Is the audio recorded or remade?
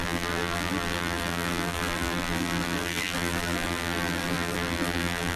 remade